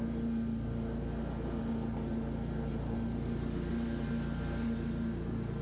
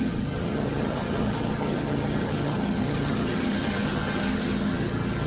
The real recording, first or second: first